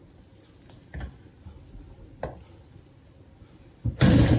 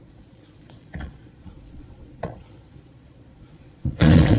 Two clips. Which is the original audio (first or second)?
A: first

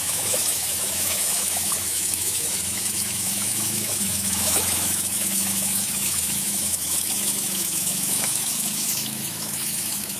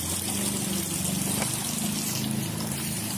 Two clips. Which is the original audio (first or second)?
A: second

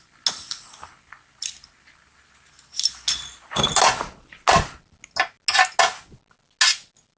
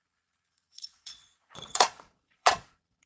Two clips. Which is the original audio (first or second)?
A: first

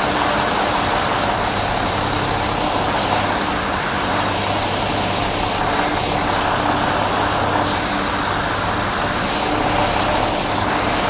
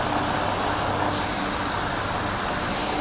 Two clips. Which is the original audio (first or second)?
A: first